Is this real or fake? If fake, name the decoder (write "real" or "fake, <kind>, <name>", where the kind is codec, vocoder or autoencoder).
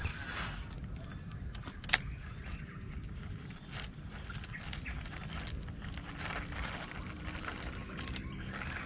real